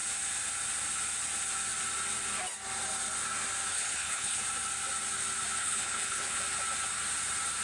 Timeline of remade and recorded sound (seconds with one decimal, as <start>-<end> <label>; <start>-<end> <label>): 0.0-3.7 recorded; 3.7-4.4 remade; 4.4-5.6 recorded; 5.6-6.4 remade; 6.4-7.6 recorded